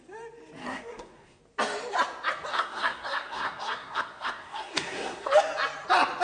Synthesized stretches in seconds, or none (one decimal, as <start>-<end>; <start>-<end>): 0.6-1.4; 2.5-5.3